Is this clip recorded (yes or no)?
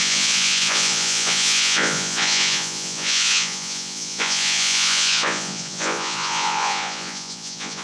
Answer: no